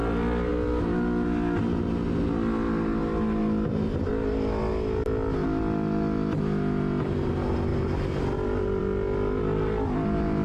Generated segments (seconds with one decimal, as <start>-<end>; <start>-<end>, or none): none